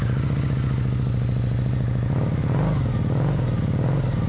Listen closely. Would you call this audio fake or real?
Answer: real